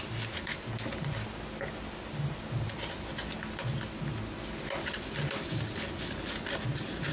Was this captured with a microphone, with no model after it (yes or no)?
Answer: yes